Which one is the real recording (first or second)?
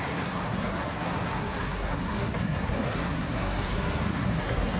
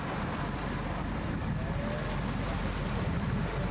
second